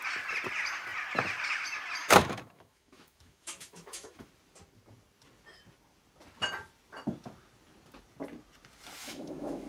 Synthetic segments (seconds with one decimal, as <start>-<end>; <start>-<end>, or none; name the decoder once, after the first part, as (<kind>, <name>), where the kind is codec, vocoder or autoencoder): 2.0-4.3 (autoencoder, DAC-VAE); 9.0-9.7